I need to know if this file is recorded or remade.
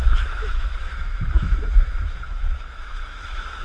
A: remade